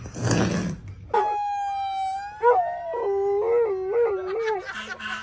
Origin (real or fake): real